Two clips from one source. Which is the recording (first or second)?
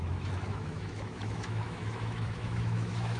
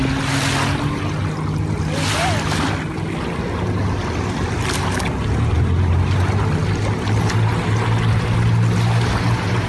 second